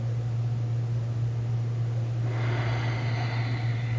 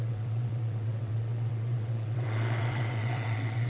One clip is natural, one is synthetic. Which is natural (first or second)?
first